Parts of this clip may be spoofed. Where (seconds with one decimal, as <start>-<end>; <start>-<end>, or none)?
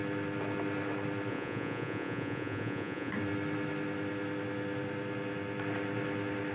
1.3-3.1